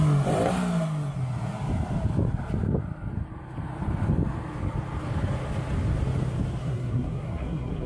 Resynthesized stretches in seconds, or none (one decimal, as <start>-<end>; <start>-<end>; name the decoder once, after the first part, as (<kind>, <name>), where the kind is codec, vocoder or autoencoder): 6.6-7.9 (codec, SNAC)